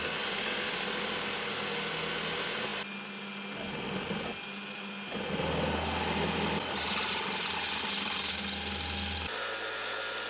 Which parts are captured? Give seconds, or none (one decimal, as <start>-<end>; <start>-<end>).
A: 0.0-10.3